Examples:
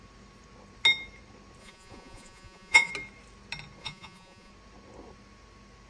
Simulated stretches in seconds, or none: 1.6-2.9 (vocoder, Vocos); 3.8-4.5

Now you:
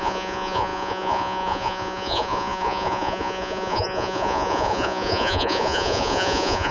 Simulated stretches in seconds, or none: 0.0-6.7 (vocoder, Vocos)

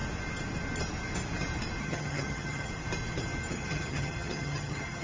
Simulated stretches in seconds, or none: 1.8-2.7 (vocoder, HiFi-GAN); 3.5-5.0

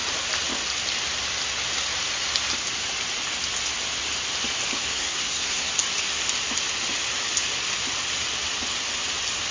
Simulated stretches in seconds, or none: 4.9-5.7 (codec, SNAC)

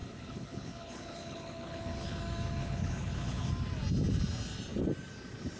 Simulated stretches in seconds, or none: 0.0-2.2 (codec, HILCodec); 2.6-3.5

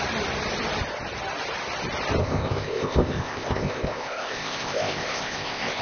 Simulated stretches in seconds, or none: 2.2-5.8 (codec, ZipCodec)

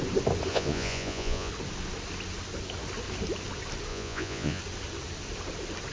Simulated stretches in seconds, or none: 0.5-1.5 (vocoder, Vocos); 3.9-4.6